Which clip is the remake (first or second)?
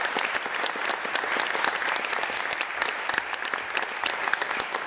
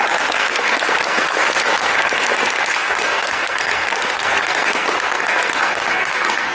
second